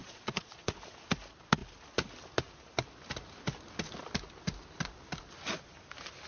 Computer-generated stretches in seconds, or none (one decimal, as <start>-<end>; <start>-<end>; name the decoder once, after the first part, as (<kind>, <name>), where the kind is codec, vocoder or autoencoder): 0.0-0.7 (vocoder, Vocos)